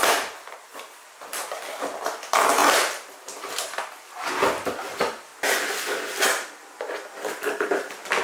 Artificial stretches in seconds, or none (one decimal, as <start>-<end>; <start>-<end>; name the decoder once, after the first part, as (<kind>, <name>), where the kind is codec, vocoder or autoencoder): 0.0-0.7 (vocoder, BigVGAN v2); 1.9-5.3; 5.8-6.6; 7.3-8.2